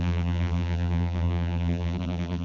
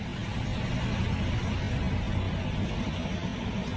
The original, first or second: second